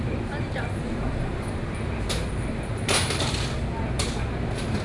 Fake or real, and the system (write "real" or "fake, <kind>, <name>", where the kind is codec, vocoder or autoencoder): fake, vocoder, BigVGAN v2